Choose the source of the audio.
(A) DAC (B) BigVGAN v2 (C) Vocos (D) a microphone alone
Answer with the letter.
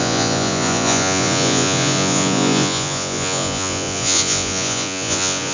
C